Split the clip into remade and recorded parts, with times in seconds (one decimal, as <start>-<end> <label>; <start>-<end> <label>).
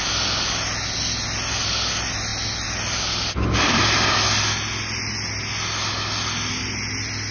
0.0-7.3 recorded